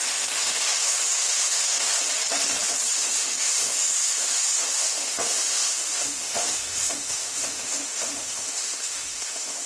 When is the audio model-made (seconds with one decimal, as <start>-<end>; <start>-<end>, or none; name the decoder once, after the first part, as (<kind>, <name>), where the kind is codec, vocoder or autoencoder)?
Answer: 0.0-1.9 (autoencoder, DAC-VAE); 2.9-9.7